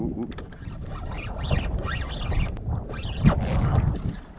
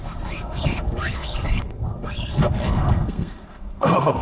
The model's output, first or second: second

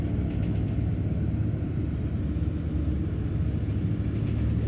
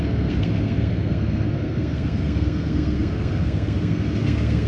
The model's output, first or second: second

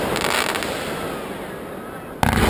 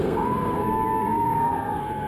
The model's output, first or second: second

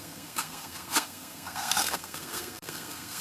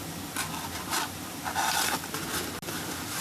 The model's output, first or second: first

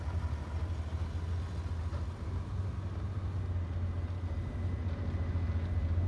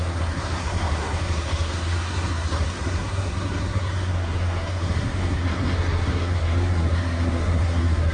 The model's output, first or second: second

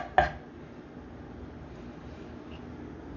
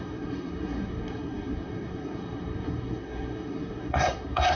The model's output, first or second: second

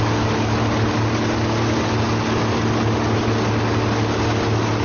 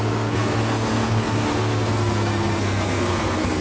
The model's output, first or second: second